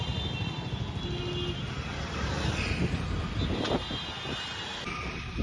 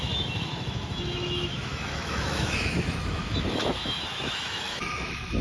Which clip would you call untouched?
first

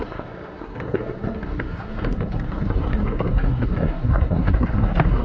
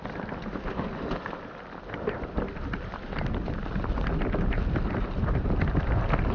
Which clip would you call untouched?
second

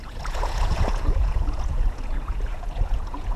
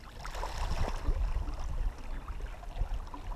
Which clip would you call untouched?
second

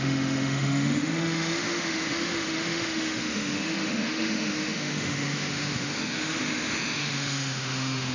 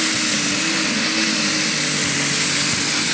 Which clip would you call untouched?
second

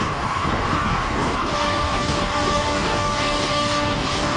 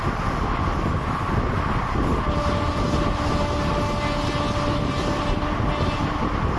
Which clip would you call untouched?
second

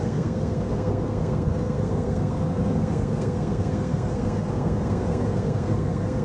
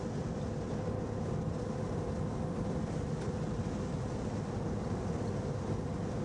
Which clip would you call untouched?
second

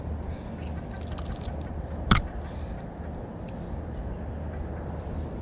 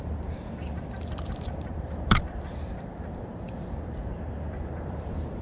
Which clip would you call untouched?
first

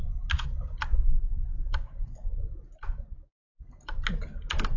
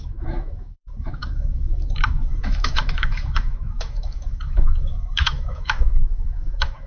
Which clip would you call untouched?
first